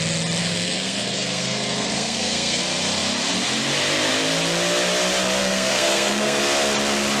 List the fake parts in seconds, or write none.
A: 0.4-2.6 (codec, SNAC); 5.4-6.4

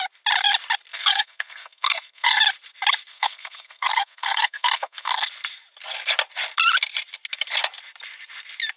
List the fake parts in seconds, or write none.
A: 0.9-2.4 (codec, SNAC); 3.1-5.3

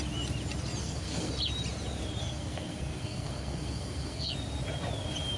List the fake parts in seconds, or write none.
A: 0.8-1.3 (codec, SNAC); 2.2-4.3